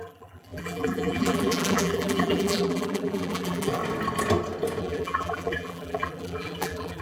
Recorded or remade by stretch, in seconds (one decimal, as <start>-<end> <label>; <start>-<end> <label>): 0.0-3.8 remade; 3.8-4.8 recorded; 4.8-7.0 remade